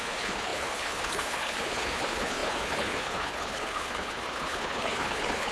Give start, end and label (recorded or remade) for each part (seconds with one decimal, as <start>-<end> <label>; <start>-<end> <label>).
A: 0.0-5.5 remade